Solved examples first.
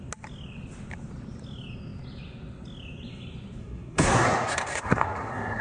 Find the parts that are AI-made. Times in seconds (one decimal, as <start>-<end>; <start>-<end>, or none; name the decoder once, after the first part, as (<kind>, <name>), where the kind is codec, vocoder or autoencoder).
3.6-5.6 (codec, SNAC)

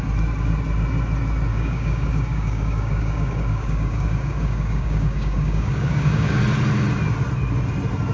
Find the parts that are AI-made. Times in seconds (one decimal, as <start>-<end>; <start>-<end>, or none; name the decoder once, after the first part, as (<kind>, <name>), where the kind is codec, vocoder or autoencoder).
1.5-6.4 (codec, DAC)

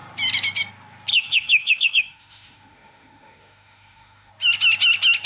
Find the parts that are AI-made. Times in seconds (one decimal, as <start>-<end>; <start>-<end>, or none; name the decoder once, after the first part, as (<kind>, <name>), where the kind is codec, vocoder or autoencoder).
1.1-4.3 (autoencoder, DAC-VAE)

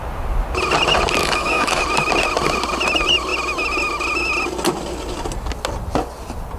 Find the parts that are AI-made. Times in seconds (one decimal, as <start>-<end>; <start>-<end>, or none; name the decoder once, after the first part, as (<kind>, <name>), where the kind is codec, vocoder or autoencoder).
1.2-1.8 (codec, DAC)

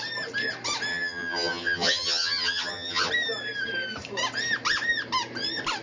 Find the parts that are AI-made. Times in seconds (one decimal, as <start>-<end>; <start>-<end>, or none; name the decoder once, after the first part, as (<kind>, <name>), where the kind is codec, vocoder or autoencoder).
0.9-3.1 (vocoder, HiFi-GAN)

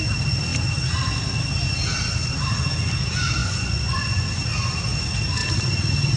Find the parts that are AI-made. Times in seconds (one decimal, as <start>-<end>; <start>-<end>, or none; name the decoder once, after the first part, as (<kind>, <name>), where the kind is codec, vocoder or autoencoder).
3.4-4.3 (vocoder, Vocos)

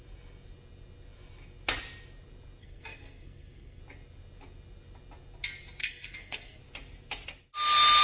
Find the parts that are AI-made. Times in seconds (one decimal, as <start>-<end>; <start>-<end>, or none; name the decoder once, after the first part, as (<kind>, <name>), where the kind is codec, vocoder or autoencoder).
2.6-3.8 (codec, SNAC); 5.8-6.6

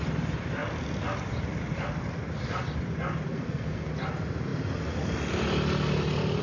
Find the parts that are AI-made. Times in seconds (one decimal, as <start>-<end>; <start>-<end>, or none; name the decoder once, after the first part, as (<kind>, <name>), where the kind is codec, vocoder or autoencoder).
3.3-3.9 (codec, SNAC)